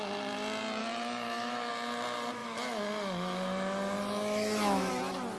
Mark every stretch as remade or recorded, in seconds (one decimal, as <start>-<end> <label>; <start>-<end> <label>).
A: 0.0-0.8 recorded; 0.8-1.7 remade; 1.7-2.4 recorded; 2.4-4.9 remade; 4.9-5.4 recorded